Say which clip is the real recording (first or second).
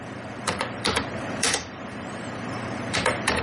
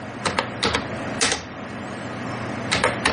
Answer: second